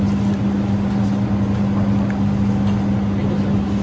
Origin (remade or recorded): recorded